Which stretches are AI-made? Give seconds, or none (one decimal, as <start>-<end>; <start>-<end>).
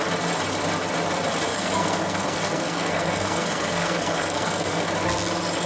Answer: 1.5-4.9